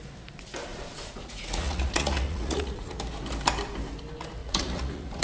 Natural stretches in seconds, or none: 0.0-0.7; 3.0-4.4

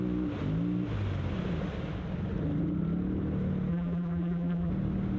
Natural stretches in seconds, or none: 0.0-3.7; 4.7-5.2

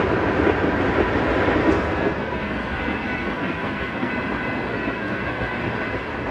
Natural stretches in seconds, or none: 0.0-1.6; 4.1-4.7; 5.6-6.3

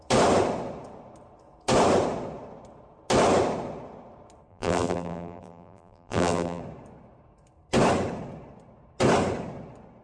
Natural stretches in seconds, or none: 0.0-4.5; 6.6-10.0

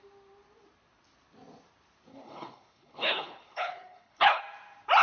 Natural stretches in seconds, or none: 0.0-2.1; 4.4-5.0

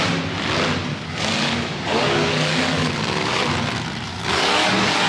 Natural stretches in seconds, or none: 0.0-0.9; 3.4-4.1

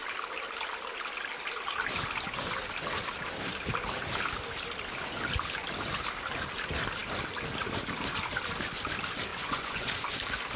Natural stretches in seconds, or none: 0.0-9.3; 9.9-10.6

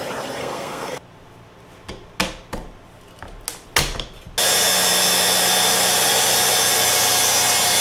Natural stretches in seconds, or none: 0.0-0.4; 1.0-7.8